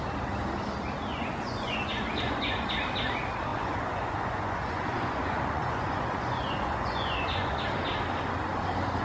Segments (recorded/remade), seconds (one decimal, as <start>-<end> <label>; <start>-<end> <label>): 0.0-1.1 recorded; 1.1-2.7 remade; 2.7-3.5 recorded; 3.5-7.6 remade; 7.6-9.0 recorded

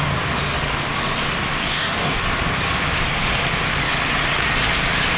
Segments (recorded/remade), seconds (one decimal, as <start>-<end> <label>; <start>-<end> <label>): 0.0-1.6 recorded; 1.6-2.2 remade; 2.2-5.2 recorded

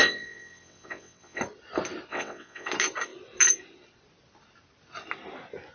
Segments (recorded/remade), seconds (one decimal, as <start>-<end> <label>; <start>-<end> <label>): 0.0-1.4 remade; 1.4-2.1 recorded; 2.1-2.7 remade; 2.7-5.7 recorded

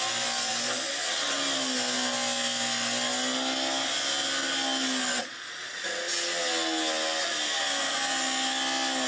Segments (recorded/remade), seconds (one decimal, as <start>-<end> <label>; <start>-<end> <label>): 0.0-9.1 recorded

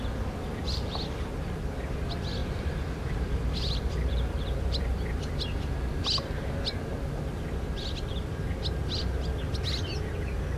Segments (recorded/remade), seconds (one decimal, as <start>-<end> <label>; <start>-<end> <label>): 0.0-2.4 recorded; 2.4-5.7 remade; 5.7-10.6 recorded

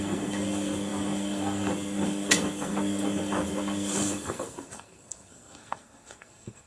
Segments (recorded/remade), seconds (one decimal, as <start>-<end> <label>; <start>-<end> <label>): 0.0-6.7 remade

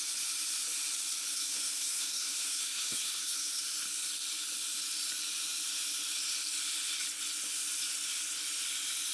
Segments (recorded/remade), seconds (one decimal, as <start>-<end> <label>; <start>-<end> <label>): 0.0-1.3 recorded; 1.3-3.6 remade; 3.6-9.1 recorded

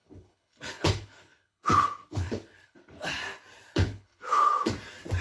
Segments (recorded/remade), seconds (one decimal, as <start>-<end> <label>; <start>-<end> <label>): 0.0-3.1 remade; 3.1-3.7 recorded; 3.7-4.7 remade; 4.7-5.2 recorded